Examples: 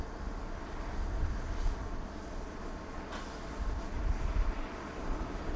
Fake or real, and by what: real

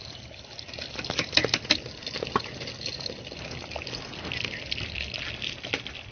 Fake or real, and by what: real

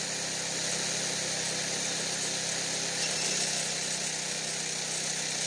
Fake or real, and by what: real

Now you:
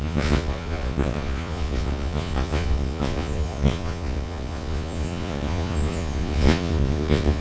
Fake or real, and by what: fake, vocoder, Vocos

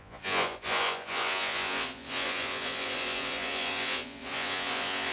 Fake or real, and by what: fake, vocoder, Vocos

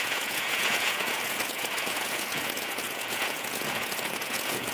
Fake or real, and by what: fake, vocoder, Vocos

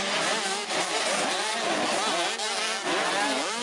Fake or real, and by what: real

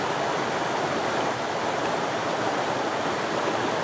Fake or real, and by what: real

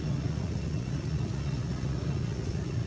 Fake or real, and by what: fake, vocoder, Vocos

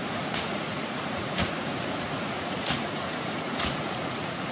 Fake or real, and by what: fake, vocoder, Vocos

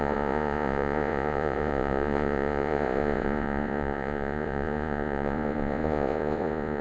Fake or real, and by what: fake, vocoder, Vocos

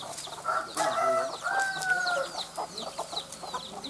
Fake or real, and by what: real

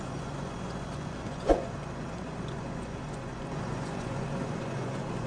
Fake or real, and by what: fake, vocoder, Vocos